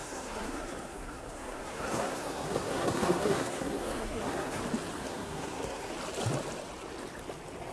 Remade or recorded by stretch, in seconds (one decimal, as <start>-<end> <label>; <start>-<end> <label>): 0.0-4.6 remade; 4.6-5.0 recorded; 5.0-5.9 remade; 5.9-7.7 recorded